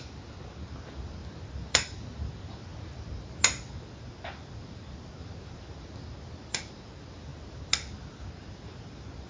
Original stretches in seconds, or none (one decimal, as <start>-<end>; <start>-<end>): 0.0-9.3